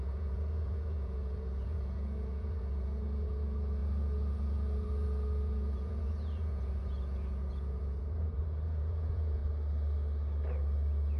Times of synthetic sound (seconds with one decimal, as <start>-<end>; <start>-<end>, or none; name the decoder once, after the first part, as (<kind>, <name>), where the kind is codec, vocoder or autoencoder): 0.0-9.4 (vocoder, Vocos)